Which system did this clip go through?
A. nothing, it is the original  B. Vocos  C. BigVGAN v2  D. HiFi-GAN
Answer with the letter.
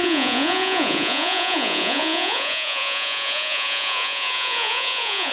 B